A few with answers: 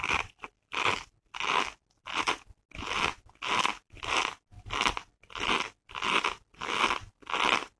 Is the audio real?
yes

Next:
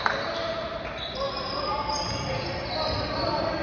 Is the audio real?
yes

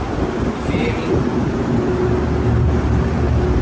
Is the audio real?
yes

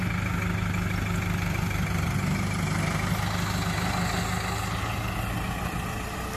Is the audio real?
yes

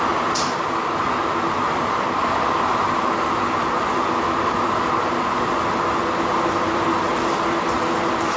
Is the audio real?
yes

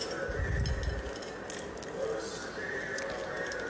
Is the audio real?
yes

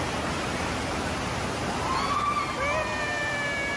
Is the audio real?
yes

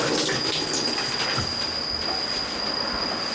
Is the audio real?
yes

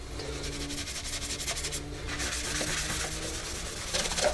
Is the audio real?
yes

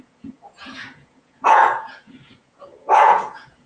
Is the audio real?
no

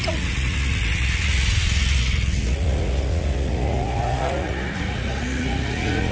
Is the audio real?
no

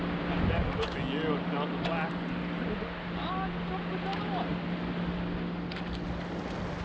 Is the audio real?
yes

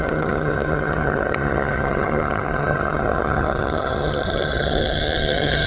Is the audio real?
no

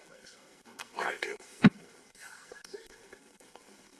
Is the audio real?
no